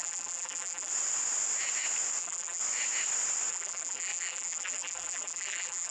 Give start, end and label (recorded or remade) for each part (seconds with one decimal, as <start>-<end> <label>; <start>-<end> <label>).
0.0-0.9 remade; 0.9-2.2 recorded; 2.2-2.6 remade; 2.6-3.5 recorded; 3.5-5.9 remade